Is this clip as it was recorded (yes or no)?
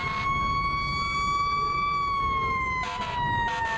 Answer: yes